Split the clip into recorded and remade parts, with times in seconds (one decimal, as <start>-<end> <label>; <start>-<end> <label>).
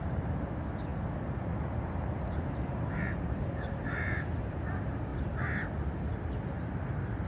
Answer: 0.0-5.1 remade; 5.1-7.3 recorded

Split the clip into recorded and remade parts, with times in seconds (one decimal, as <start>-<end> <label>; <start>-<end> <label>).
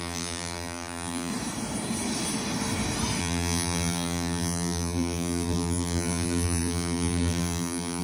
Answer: 0.0-1.3 remade; 1.3-3.2 recorded; 3.2-8.0 remade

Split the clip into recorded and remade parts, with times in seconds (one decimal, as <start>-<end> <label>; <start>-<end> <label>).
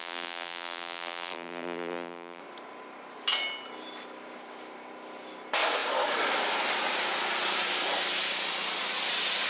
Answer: 0.0-2.4 remade; 2.4-9.5 recorded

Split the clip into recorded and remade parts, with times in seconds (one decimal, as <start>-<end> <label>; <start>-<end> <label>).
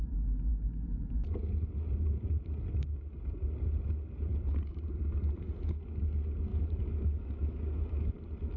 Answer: 0.0-6.5 recorded; 6.5-8.1 remade; 8.1-8.6 recorded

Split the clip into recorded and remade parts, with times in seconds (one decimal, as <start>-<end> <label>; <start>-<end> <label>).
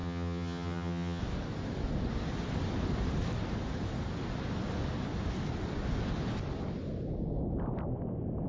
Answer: 0.0-1.2 remade; 1.2-8.5 recorded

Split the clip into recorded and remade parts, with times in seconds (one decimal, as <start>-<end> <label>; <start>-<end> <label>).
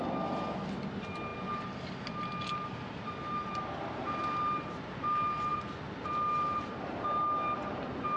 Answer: 0.0-8.2 recorded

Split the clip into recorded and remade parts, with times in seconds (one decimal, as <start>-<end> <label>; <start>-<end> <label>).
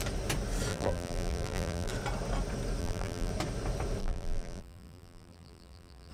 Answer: 0.0-0.7 recorded; 0.7-1.9 remade; 1.9-2.8 recorded; 2.8-3.3 remade; 3.3-4.0 recorded; 4.0-6.1 remade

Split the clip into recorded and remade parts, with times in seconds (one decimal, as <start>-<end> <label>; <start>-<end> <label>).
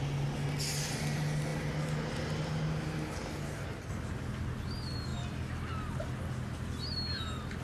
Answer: 0.0-7.6 recorded